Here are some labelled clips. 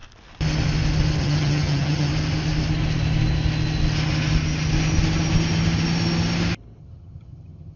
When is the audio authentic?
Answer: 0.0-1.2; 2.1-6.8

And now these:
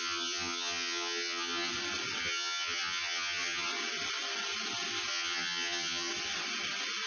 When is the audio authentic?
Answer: 1.7-2.2; 3.7-5.1; 6.1-7.1